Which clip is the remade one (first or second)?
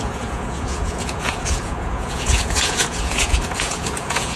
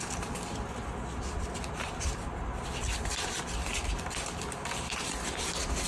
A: first